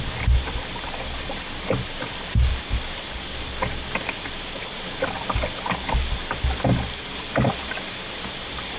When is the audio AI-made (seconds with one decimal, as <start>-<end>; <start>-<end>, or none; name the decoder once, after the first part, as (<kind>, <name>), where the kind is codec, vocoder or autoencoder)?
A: none